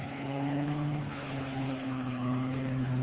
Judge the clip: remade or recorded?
remade